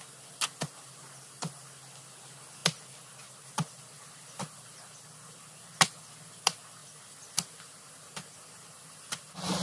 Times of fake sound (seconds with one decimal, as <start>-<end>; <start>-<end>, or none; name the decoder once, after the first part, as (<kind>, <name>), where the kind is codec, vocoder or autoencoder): none